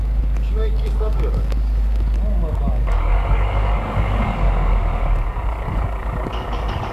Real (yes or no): no